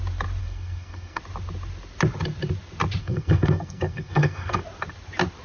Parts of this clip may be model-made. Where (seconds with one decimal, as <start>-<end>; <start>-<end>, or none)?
0.4-1.2; 3.0-4.6